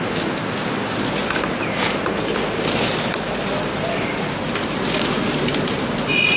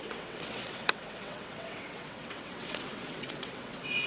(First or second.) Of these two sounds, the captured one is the first